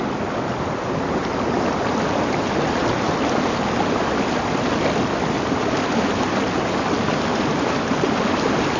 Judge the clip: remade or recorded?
recorded